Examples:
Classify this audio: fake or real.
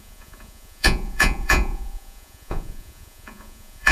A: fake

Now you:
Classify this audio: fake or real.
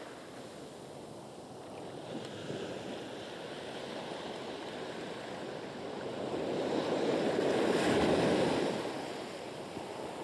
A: real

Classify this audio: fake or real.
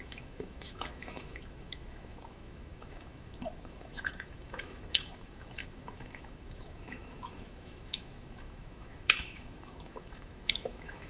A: fake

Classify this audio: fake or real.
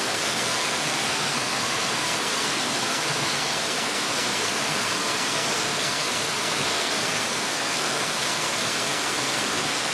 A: fake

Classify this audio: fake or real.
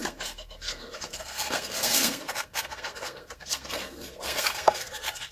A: fake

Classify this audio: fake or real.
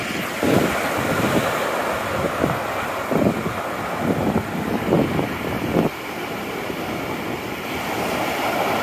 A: real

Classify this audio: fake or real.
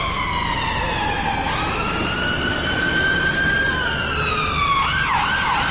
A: real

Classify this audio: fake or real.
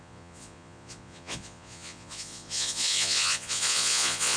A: fake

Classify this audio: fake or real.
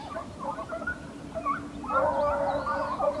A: real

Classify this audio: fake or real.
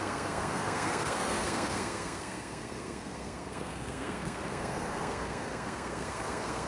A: fake